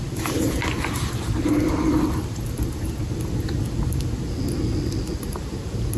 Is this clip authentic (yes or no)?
yes